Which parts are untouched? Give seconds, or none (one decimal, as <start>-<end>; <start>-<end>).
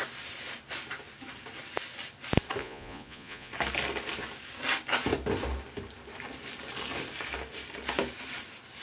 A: 0.0-2.6; 3.5-8.8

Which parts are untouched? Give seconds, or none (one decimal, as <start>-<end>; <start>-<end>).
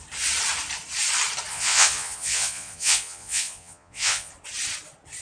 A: 0.0-1.5; 4.3-5.2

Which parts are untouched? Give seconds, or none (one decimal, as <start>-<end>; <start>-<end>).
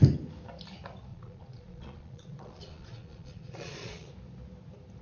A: 0.0-1.1; 4.1-5.0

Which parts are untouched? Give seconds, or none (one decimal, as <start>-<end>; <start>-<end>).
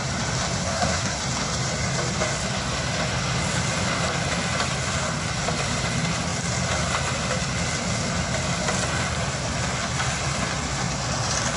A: 0.0-0.6; 1.2-11.6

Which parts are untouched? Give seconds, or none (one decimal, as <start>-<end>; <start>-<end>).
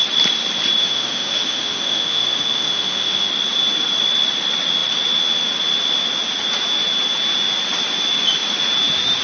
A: 0.0-0.8; 3.3-9.2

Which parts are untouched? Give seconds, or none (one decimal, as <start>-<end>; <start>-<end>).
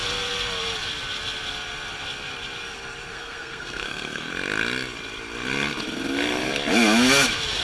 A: 0.0-3.1; 4.3-7.6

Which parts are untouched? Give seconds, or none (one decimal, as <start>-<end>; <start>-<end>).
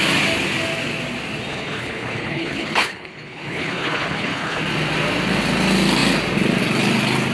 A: 0.0-1.5; 4.6-7.3